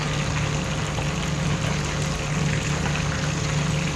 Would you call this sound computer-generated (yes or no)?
no